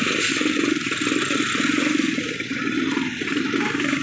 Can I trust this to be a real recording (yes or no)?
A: yes